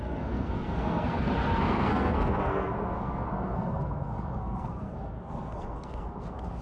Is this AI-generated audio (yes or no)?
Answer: yes